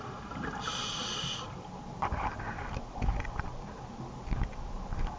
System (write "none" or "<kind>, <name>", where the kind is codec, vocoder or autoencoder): none